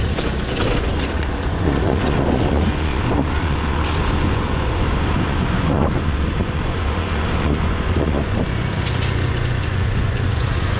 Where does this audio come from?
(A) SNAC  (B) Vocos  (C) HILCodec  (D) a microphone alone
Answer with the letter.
B